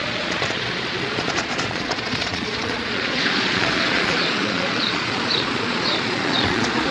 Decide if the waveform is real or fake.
fake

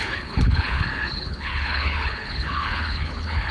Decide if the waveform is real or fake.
fake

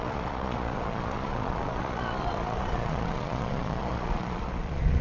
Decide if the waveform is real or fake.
fake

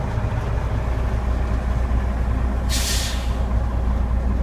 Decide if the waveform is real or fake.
real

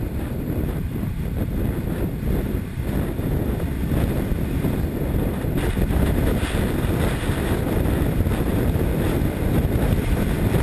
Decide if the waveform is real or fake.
fake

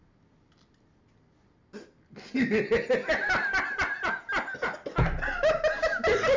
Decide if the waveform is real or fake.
real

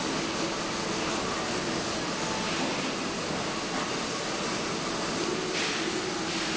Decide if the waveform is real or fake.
real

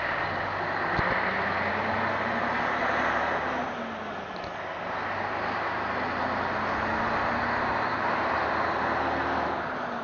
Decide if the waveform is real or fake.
real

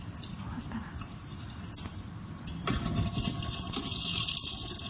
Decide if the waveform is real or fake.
real